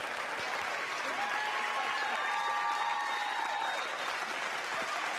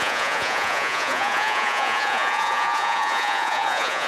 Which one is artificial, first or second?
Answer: second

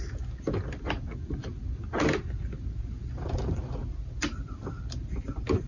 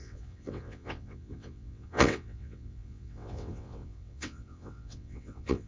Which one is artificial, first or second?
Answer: second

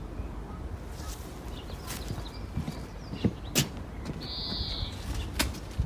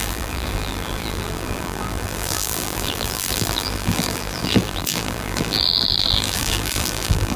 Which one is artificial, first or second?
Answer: second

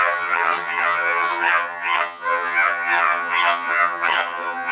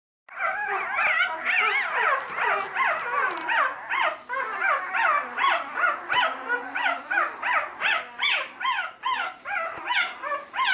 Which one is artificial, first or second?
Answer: first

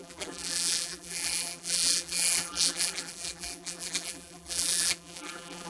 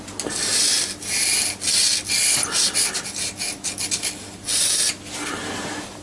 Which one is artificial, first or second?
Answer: first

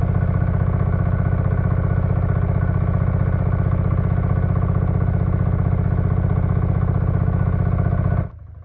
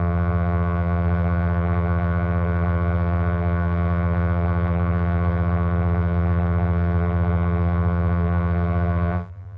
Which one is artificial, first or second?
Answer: second